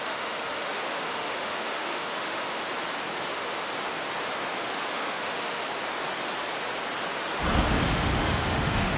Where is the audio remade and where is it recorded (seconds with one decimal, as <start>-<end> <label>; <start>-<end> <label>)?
0.0-2.6 remade; 2.6-3.3 recorded; 3.3-3.7 remade; 3.7-4.7 recorded; 4.7-5.7 remade; 5.7-7.8 recorded; 7.8-9.0 remade